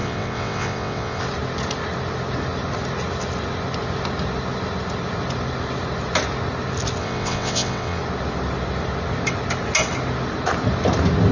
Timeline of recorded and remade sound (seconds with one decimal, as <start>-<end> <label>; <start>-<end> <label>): 0.0-1.2 remade; 1.2-7.0 recorded; 7.0-8.0 remade; 8.0-11.3 recorded